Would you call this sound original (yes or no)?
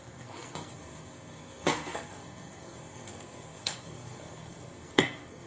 no